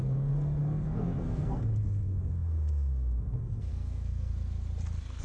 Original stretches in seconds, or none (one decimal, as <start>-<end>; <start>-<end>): 4.3-5.2